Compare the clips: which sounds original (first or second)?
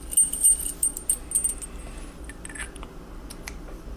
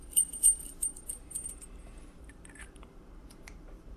first